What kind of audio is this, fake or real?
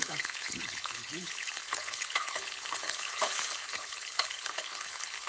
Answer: fake